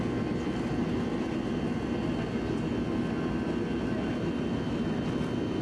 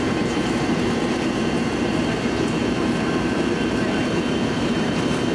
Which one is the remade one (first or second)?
second